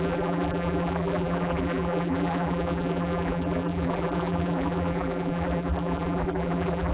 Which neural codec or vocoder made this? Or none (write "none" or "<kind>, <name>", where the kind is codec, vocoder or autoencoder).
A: vocoder, BigVGAN v2